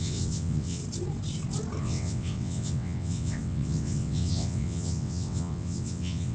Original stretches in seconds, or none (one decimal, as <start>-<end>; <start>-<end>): 0.8-1.8